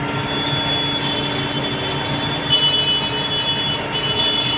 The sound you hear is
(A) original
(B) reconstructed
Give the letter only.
A